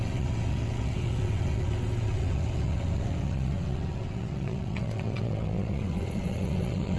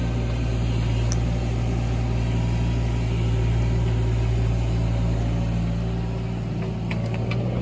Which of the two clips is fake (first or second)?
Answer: first